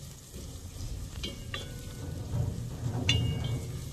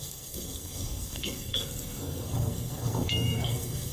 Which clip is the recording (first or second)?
first